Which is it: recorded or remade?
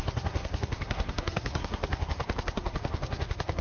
remade